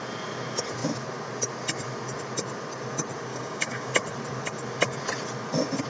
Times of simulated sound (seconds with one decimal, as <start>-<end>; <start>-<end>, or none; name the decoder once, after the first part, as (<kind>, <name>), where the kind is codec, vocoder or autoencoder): 3.3-3.9 (codec, DAC)